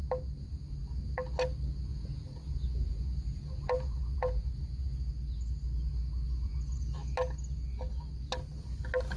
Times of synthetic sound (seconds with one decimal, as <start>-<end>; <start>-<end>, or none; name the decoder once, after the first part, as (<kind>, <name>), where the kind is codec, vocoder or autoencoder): 1.9-5.1 (vocoder, Vocos)